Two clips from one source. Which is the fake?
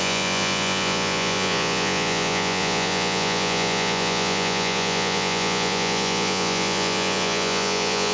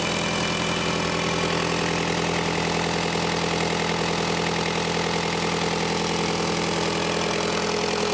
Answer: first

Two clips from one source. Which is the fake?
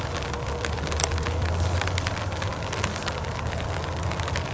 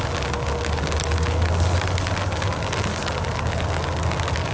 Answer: first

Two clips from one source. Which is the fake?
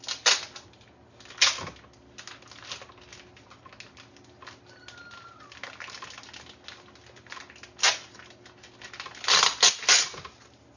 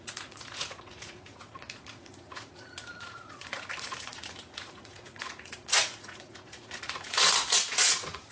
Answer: second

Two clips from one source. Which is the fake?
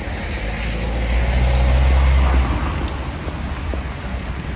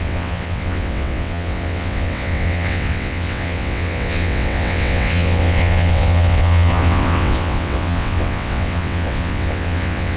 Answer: second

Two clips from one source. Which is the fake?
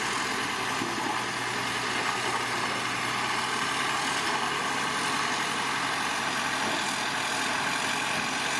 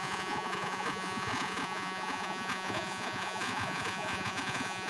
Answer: second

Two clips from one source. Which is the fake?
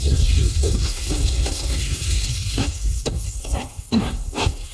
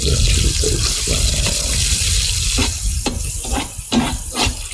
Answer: first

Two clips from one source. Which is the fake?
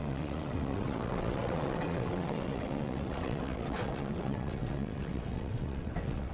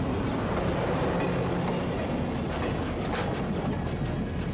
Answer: first